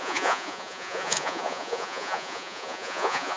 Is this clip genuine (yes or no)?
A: no